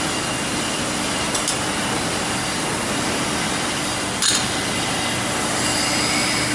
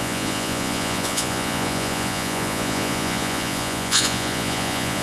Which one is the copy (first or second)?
second